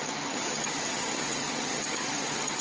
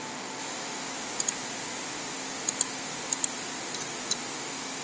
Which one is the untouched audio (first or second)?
second